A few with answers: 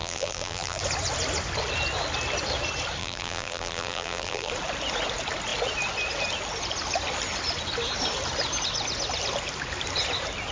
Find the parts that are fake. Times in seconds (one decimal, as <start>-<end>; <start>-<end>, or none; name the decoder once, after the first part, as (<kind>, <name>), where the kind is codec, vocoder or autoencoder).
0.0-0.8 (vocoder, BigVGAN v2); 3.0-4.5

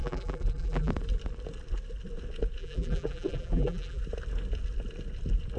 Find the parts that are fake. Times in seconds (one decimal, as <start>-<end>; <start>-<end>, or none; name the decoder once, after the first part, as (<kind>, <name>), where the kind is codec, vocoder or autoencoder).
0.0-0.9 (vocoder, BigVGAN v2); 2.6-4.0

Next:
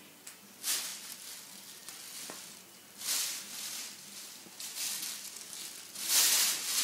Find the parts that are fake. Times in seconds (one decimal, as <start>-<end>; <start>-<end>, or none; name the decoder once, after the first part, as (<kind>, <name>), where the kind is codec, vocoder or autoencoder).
none